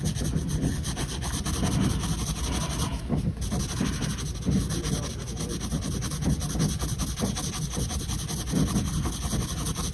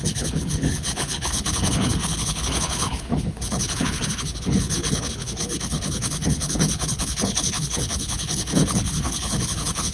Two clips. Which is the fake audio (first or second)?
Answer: second